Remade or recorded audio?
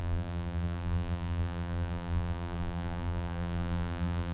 remade